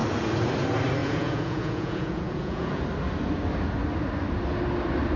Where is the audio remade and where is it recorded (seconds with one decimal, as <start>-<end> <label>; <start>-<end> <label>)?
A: 0.0-1.0 recorded; 1.0-2.8 remade; 2.8-5.2 recorded